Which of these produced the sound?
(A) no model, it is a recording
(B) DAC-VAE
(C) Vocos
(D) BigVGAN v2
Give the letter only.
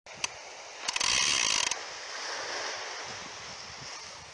A